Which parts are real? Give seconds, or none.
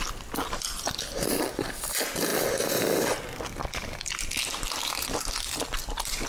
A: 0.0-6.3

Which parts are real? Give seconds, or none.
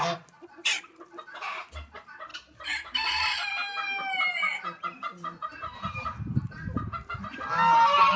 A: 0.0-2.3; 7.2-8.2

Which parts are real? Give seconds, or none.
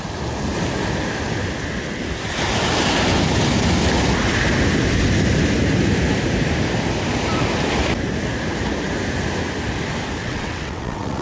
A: 0.0-10.2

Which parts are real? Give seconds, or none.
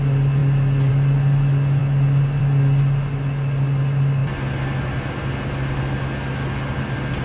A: 0.0-7.2